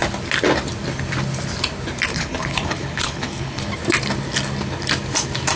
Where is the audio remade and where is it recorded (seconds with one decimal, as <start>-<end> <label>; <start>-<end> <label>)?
0.0-2.1 recorded; 2.1-3.7 remade; 3.7-5.6 recorded